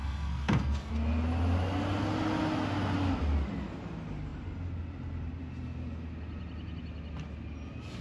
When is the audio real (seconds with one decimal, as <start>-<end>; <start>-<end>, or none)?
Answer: 0.9-8.0